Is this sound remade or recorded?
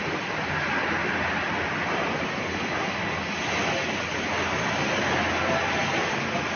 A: recorded